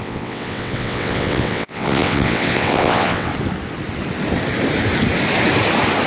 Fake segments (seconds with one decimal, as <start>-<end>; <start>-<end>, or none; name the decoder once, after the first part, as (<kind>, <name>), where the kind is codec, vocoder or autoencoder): 0.0-3.3 (vocoder, WaveNeXt)